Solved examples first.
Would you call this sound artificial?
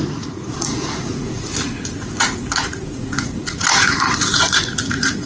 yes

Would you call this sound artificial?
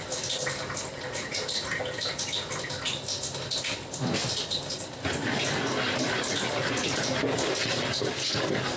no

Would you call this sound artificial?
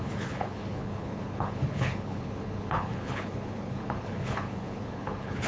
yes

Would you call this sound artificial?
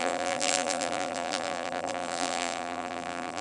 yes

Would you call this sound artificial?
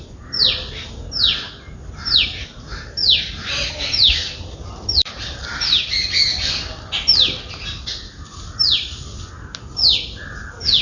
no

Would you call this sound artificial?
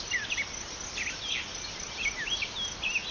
no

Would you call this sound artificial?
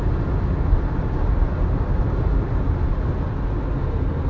no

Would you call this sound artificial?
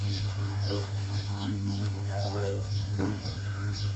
yes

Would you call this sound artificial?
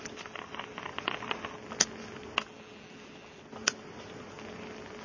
no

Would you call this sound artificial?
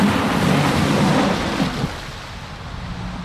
no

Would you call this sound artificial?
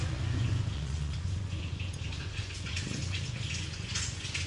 yes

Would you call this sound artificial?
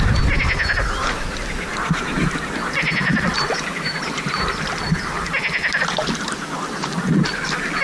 no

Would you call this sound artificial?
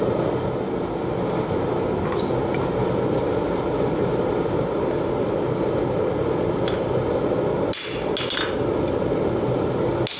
no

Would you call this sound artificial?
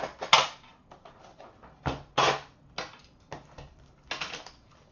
no